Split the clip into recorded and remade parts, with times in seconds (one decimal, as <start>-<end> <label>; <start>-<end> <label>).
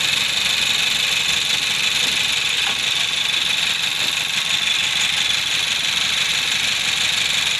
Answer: 0.0-7.6 recorded